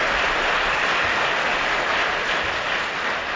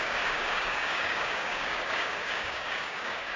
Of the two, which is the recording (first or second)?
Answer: first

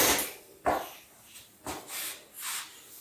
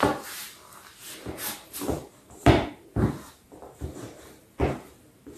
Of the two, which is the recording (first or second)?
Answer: first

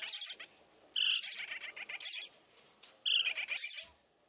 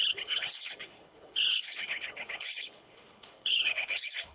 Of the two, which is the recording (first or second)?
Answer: first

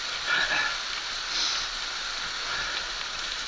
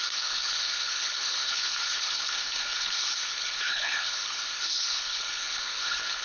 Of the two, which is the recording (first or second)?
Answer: first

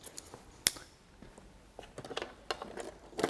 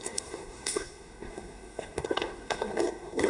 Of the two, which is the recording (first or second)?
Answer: first